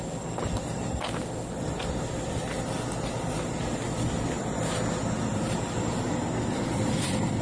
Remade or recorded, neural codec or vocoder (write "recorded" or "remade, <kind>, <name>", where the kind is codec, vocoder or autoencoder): recorded